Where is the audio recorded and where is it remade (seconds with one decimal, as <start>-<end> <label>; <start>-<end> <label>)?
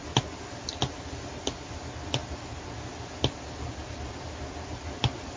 0.0-5.4 recorded